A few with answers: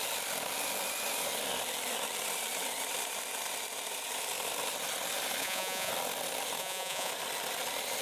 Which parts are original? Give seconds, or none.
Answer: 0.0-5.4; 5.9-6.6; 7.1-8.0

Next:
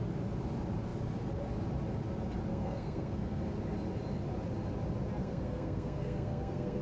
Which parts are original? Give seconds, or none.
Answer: 0.0-2.5; 3.4-5.2

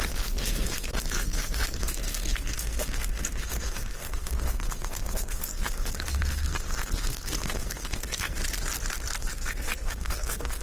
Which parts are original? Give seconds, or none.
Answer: 8.4-9.2